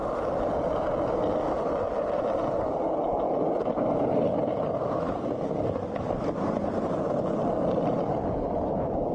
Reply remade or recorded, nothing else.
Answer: recorded